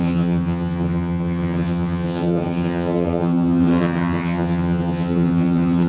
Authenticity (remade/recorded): remade